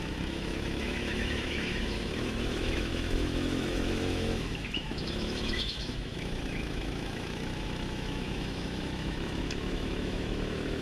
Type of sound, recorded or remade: remade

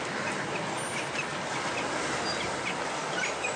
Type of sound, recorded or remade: recorded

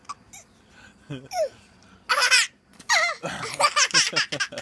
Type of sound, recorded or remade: recorded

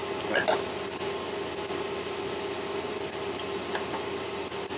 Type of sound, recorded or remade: recorded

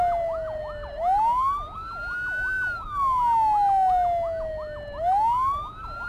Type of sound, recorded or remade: recorded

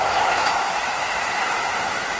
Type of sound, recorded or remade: remade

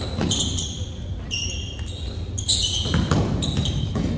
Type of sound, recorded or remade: recorded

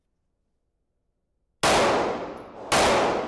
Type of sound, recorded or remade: recorded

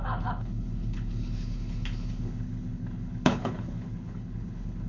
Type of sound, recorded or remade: remade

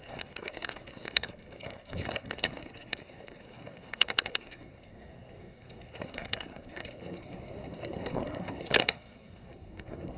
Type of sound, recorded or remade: remade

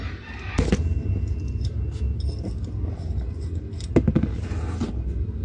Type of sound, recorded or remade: recorded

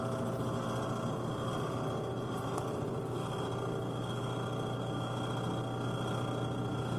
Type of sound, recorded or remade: recorded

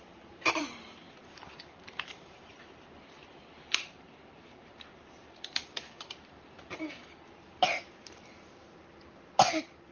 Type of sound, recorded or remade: remade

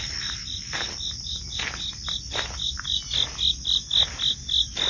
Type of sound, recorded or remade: recorded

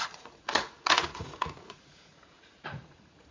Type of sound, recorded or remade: remade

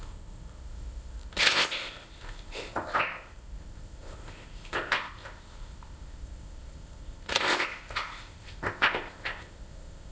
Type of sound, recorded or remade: remade